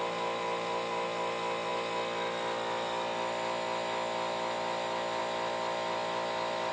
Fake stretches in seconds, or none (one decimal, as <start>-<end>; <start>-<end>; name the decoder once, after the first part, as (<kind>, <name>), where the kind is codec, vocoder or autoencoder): none